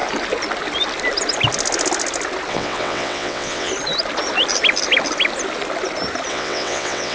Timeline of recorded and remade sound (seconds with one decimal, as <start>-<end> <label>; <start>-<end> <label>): 0.0-2.5 recorded; 2.5-3.7 remade; 3.7-6.3 recorded; 6.3-7.1 remade